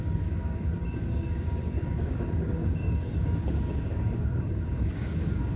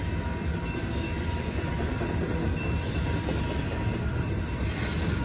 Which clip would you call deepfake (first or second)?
first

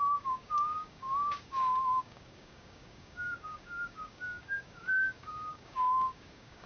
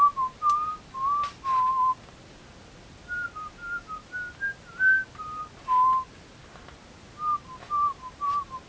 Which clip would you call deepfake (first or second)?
first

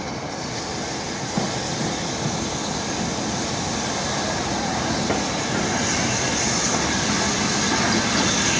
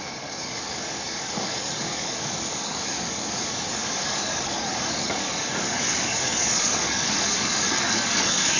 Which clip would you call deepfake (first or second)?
second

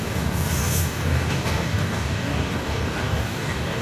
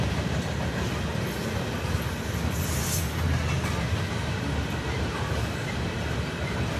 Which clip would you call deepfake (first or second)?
first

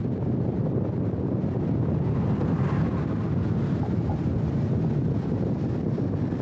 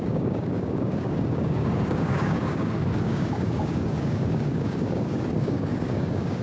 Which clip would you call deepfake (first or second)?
second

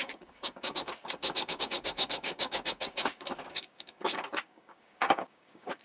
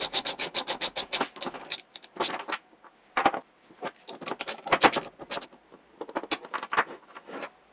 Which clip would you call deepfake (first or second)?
first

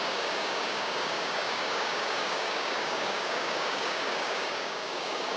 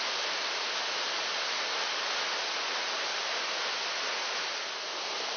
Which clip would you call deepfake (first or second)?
first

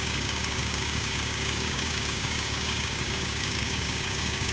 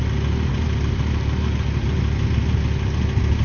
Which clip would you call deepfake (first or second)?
first